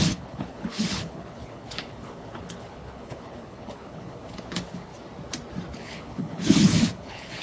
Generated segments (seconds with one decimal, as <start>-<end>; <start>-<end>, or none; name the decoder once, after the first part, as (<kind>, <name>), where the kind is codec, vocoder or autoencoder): 0.0-4.9 (codec, HILCodec); 5.7-7.4